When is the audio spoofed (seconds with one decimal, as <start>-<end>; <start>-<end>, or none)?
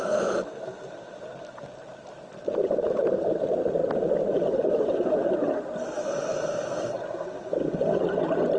none